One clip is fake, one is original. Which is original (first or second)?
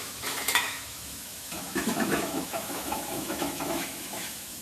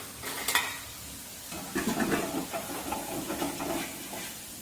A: second